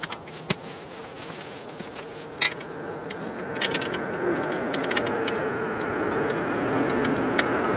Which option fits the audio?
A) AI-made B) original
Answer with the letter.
B